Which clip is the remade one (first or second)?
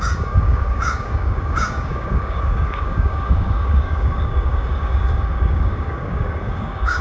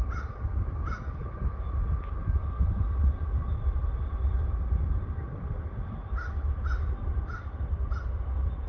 first